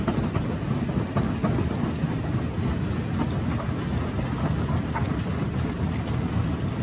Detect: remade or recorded recorded